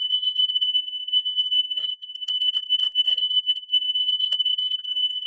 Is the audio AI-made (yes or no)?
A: yes